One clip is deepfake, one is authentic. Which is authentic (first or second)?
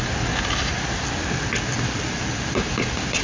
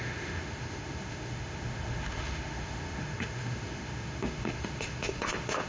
first